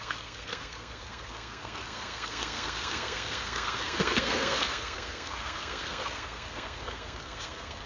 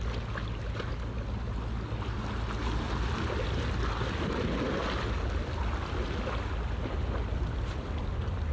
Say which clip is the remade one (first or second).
first